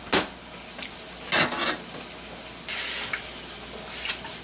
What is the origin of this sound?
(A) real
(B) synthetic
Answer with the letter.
A